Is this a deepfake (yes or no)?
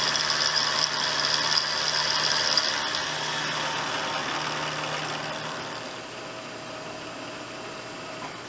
no